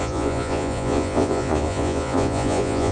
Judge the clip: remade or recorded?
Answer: remade